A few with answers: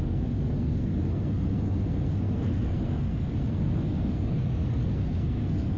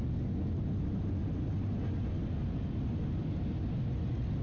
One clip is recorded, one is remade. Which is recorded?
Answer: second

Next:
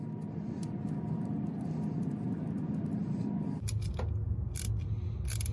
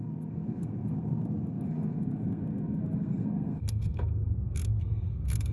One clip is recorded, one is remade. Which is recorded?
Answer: first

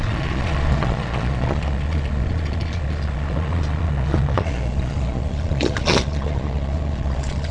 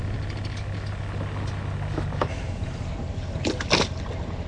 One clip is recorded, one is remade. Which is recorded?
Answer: second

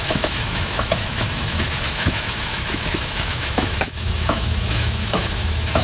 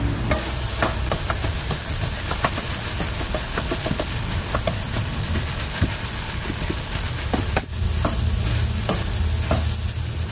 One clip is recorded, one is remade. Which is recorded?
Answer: second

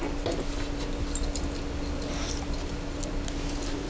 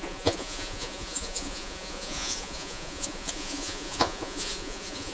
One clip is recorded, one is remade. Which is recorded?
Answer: first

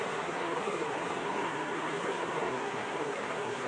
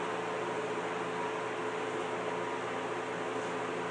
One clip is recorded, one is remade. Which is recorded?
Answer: second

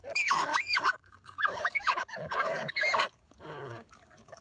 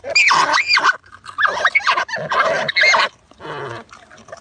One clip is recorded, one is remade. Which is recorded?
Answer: second